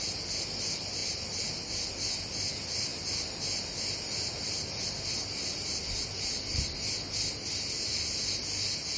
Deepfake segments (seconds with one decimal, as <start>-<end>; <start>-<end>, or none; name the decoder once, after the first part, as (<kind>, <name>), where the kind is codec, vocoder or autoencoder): none